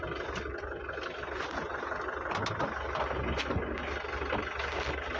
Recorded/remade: recorded